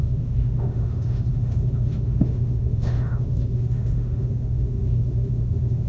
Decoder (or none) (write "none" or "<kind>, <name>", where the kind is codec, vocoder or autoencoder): autoencoder, DAC-VAE